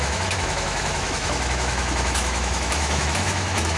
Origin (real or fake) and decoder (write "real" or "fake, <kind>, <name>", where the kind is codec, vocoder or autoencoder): fake, autoencoder, DAC-VAE